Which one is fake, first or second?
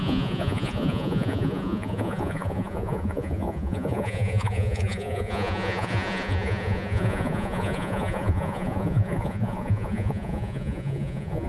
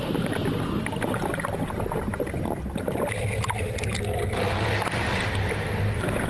first